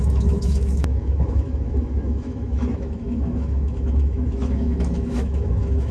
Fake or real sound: fake